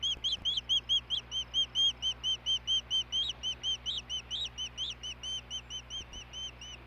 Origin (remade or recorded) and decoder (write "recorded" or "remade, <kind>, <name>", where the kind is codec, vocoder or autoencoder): recorded